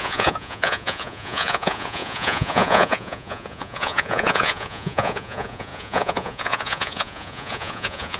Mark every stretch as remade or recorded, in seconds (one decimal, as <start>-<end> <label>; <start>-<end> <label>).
0.0-8.2 remade